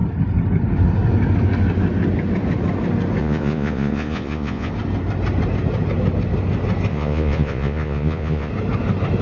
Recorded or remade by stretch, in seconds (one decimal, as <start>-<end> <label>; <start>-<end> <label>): 0.0-3.2 recorded; 3.2-4.7 remade; 4.7-6.9 recorded; 6.9-8.5 remade; 8.5-9.2 recorded